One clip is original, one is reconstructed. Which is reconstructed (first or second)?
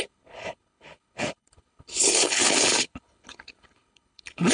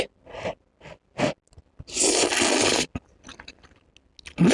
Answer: first